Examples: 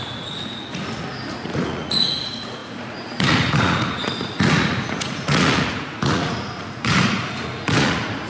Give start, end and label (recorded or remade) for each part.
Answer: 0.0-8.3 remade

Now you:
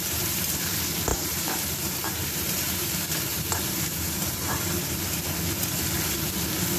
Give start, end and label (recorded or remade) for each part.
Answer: 0.0-1.1 recorded; 1.1-5.2 remade; 5.2-6.8 recorded